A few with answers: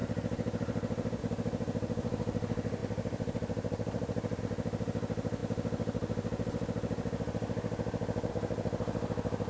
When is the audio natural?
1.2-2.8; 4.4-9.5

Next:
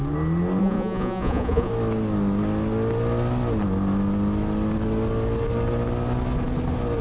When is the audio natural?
0.0-0.6; 1.7-7.0

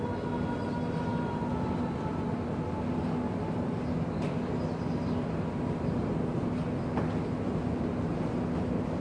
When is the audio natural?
0.0-9.0

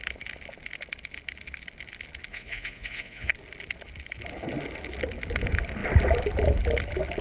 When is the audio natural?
0.0-2.3; 3.3-7.2

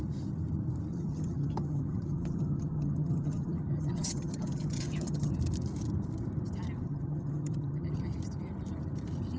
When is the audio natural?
0.0-0.9; 5.3-6.8; 7.9-9.4

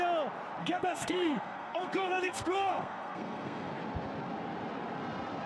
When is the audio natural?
0.0-0.6; 3.7-5.5

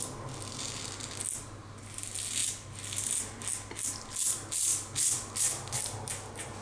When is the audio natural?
0.0-6.6